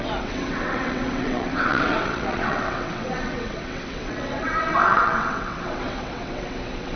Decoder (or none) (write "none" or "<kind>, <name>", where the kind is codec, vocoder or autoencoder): vocoder, WaveNeXt